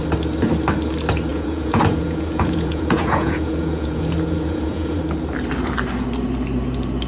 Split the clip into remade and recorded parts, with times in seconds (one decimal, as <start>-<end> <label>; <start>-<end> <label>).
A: 0.0-1.3 recorded; 1.3-5.0 remade; 5.0-7.1 recorded